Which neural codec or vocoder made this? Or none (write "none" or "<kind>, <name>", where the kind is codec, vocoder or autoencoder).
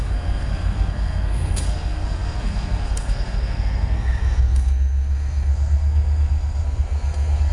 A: codec, SNAC